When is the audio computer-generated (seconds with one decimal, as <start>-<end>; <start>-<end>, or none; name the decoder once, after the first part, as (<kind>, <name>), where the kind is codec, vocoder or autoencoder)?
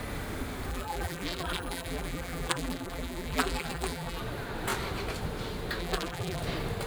0.7-4.2 (vocoder, BigVGAN v2); 5.8-6.4